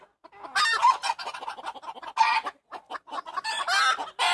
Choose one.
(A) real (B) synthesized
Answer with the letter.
A